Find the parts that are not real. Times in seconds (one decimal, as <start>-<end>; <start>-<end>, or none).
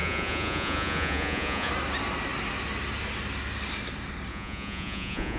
0.0-1.7; 4.3-5.4